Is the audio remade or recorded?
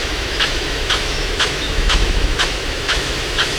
remade